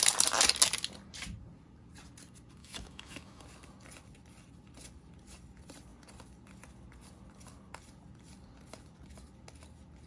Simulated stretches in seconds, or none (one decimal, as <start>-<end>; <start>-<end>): 2.6-3.4